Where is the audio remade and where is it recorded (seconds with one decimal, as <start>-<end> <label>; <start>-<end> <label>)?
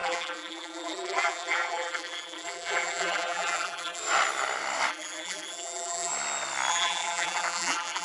0.0-4.0 remade; 4.0-4.9 recorded; 4.9-6.1 remade; 6.1-6.7 recorded; 6.7-8.0 remade